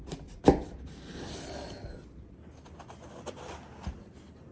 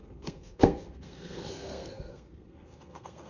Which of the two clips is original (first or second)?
first